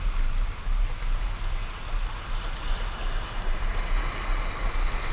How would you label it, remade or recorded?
recorded